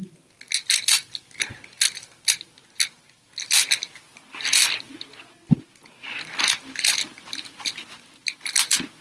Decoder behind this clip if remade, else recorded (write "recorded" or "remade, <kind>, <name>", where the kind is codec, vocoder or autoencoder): recorded